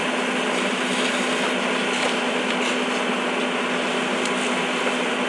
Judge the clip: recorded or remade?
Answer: recorded